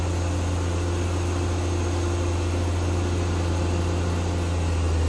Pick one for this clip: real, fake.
real